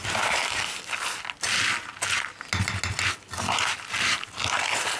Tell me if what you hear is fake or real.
real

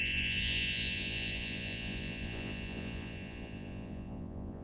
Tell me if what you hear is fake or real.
fake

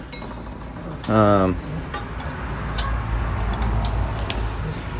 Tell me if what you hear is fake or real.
real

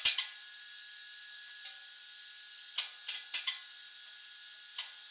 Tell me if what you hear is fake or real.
real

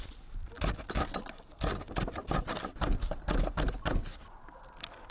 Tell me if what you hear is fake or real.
real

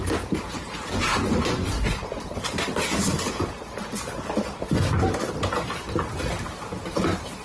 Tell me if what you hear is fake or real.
fake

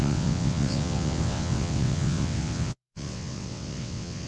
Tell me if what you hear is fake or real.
fake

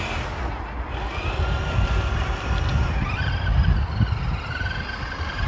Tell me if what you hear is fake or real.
real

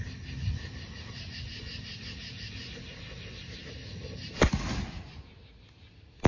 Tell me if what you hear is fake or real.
real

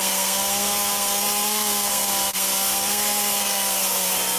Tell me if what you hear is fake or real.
fake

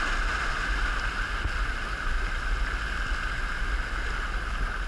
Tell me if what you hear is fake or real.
real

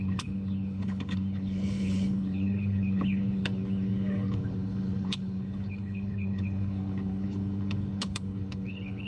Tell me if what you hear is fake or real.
fake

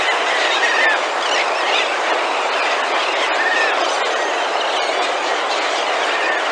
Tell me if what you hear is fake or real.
real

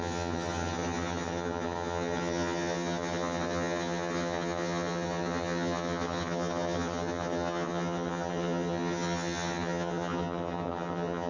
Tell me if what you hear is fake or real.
fake